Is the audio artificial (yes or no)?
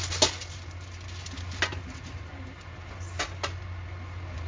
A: no